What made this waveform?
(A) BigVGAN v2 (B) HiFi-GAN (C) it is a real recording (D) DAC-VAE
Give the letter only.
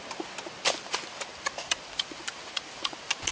C